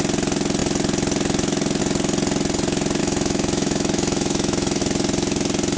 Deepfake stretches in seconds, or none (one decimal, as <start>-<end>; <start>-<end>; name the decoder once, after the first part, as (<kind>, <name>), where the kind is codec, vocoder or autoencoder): 3.0-4.8 (autoencoder, DAC-VAE)